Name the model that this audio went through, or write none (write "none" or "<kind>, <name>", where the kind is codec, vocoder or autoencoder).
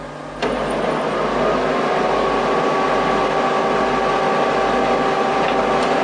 none